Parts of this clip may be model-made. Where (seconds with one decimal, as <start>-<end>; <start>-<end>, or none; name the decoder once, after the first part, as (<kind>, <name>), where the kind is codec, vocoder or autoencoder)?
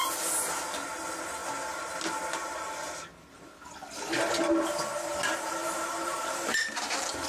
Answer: 1.4-1.9 (vocoder, BigVGAN v2); 4.9-6.7